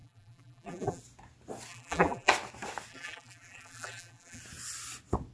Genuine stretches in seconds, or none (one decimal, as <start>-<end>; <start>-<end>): 1.0-1.7; 2.3-2.9; 4.4-5.3